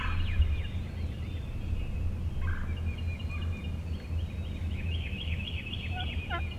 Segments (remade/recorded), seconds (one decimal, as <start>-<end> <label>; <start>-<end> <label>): 0.0-4.6 recorded; 4.6-5.7 remade; 5.7-6.6 recorded

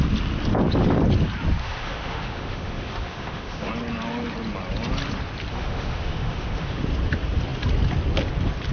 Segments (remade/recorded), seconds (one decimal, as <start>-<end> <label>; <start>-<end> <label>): 0.0-1.6 recorded; 1.6-3.7 remade; 3.7-5.5 recorded; 5.5-6.8 remade; 6.8-8.7 recorded

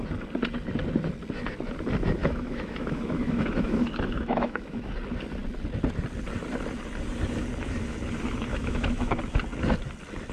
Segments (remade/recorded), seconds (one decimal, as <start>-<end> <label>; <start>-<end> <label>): 0.0-2.2 recorded; 2.2-4.9 remade; 4.9-8.5 recorded; 8.5-9.2 remade; 9.2-10.3 recorded

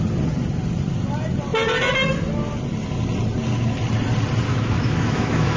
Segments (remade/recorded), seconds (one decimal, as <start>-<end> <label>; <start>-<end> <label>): 0.0-4.5 recorded; 4.5-5.6 remade

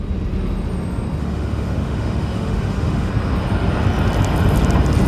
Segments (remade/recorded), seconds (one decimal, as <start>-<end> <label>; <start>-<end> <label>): 0.0-1.2 recorded; 1.2-3.1 remade; 3.1-5.1 recorded

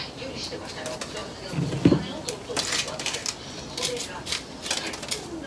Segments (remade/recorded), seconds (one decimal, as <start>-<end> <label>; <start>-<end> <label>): 0.0-5.5 recorded

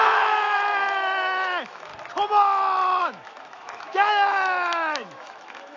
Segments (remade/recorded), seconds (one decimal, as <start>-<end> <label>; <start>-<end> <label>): 0.0-1.9 remade; 1.9-3.0 recorded; 3.0-5.8 remade

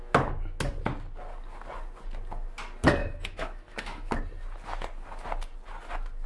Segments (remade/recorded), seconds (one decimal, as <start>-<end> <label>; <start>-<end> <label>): 0.0-3.0 recorded; 3.0-4.1 remade; 4.1-6.3 recorded